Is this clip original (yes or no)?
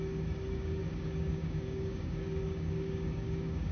no